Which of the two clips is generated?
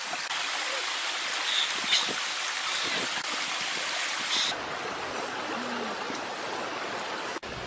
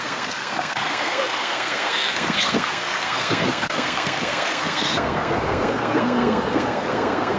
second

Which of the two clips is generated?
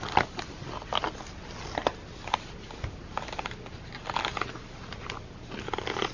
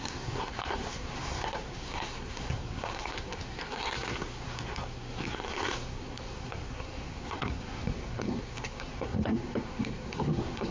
second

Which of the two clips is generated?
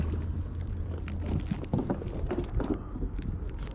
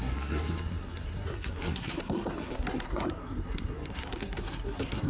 second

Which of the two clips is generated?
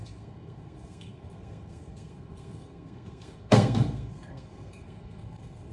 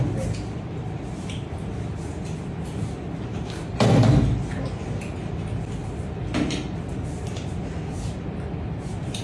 first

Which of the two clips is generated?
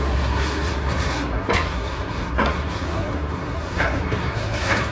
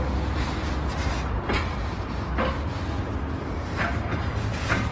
first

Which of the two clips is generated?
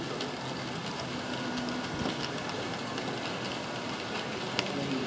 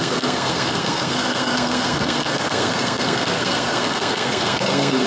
second